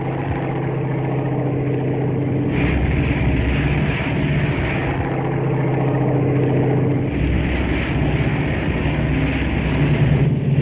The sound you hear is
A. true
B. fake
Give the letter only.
A